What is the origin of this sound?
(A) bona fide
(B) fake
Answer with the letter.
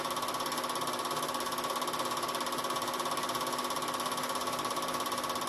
A